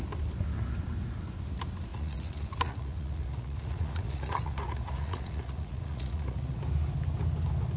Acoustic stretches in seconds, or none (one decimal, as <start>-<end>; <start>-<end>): 0.0-1.9; 6.6-7.8